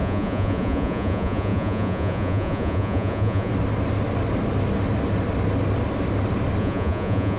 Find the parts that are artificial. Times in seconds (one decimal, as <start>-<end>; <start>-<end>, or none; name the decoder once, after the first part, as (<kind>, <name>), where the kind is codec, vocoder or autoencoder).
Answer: 0.0-3.5 (vocoder, Vocos); 6.6-7.4